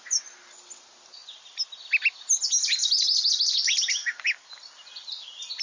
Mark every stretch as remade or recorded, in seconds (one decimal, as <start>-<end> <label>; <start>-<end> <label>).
0.0-5.6 recorded